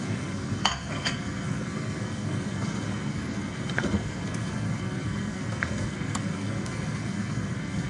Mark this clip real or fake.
fake